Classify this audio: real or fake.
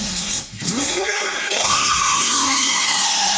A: fake